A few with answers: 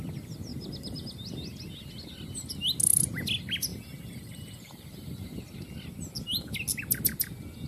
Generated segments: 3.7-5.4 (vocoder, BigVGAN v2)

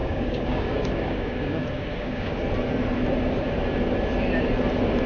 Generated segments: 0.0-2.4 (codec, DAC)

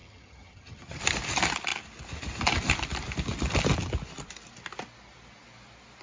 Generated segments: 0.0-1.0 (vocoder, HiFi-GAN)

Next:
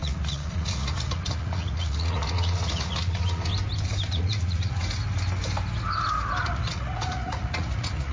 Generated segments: 0.0-3.5 (vocoder, Vocos); 4.1-4.8; 6.4-8.1

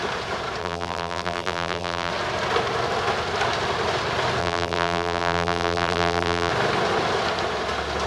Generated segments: 0.6-2.1 (vocoder, BigVGAN v2); 4.4-6.5

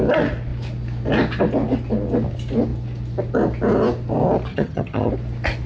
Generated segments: 4.5-5.1 (vocoder, HiFi-GAN)

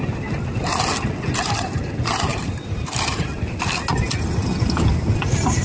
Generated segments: 2.3-3.3 (vocoder, BigVGAN v2)